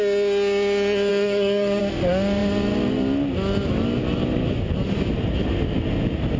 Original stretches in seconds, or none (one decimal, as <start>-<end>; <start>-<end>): 0.0-1.1; 1.8-6.4